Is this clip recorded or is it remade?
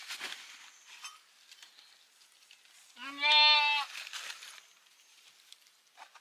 recorded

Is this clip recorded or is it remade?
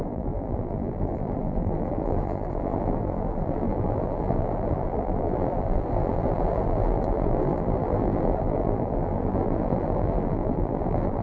remade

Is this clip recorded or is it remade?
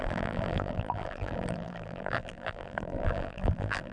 remade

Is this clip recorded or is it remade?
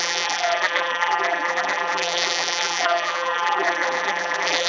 remade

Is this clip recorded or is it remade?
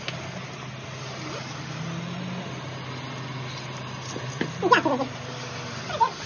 recorded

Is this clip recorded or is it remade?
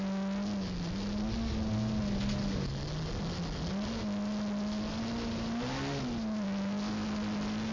recorded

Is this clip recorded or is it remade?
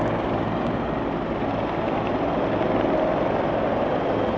recorded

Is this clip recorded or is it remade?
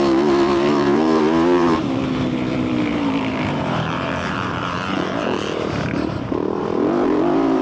remade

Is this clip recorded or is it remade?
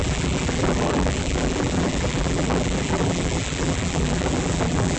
remade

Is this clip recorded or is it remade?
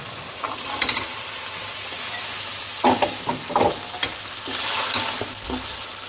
recorded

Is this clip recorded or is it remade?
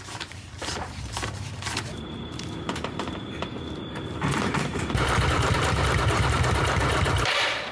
remade